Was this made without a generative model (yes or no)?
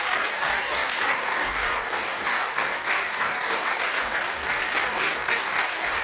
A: no